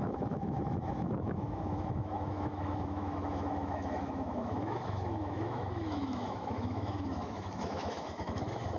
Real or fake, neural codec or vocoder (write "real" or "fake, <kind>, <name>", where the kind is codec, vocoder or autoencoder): fake, autoencoder, DAC-VAE